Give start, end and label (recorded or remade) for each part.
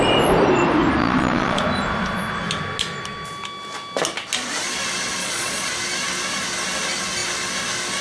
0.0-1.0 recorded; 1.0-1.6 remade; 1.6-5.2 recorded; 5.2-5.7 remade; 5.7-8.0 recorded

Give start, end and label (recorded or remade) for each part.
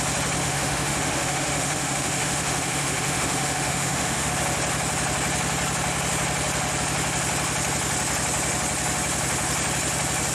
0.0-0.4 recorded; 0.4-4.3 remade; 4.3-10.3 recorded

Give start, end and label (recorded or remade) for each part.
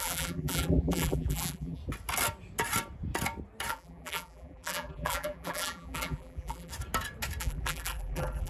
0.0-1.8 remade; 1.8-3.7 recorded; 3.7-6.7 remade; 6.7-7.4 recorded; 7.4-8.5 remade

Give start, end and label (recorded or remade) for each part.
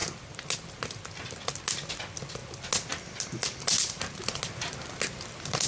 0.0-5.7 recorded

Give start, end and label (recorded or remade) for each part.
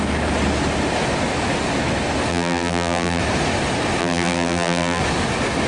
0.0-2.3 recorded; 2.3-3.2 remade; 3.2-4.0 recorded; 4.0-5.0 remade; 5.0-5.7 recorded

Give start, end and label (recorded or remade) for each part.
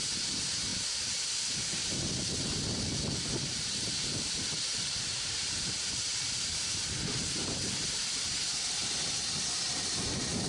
0.0-0.7 recorded; 0.7-1.3 remade; 1.3-3.5 recorded; 3.5-8.2 remade; 8.2-10.5 recorded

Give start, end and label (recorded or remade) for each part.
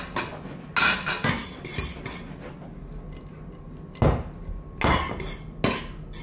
0.0-6.2 recorded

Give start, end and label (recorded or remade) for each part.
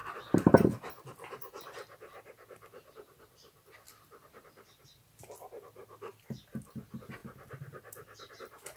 0.0-8.8 recorded